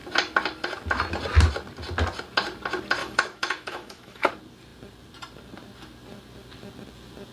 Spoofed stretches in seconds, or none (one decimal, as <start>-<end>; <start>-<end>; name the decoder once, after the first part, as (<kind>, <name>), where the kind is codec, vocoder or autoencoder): 3.0-4.3 (autoencoder, DAC-VAE)